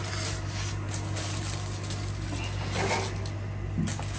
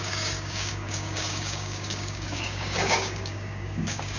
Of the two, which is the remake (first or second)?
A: second